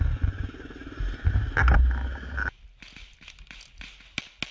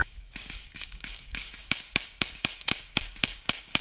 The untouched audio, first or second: first